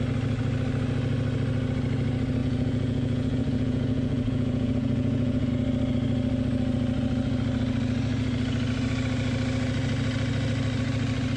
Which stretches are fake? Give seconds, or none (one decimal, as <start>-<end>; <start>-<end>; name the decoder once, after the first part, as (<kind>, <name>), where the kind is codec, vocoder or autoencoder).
2.4-5.5 (vocoder, Vocos)